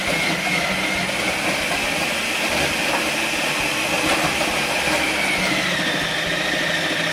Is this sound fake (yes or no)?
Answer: no